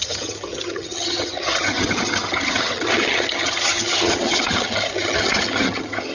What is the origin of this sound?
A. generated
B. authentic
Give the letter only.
A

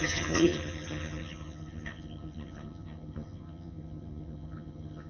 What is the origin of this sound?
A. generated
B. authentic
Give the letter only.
A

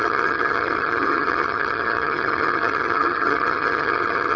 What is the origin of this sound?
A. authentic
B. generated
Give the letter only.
B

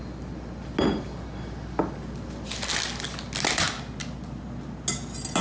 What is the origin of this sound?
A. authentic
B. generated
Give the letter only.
A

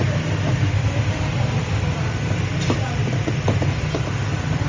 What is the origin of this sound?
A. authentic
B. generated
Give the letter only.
A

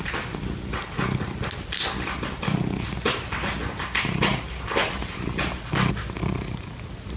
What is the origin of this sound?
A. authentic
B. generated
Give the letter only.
A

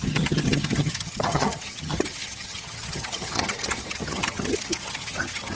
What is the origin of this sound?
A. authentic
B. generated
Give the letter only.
B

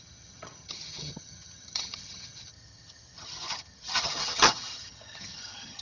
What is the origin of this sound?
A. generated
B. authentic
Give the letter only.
A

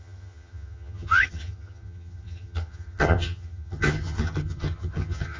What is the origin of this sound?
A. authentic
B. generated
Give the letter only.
B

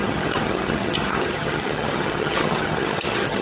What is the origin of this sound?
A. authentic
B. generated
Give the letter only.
B